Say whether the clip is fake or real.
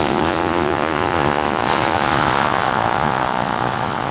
fake